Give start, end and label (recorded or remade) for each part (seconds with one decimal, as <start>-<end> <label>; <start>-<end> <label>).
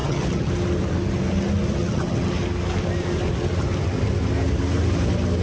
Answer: 0.0-0.5 remade; 0.5-1.8 recorded; 1.8-2.3 remade; 2.3-5.4 recorded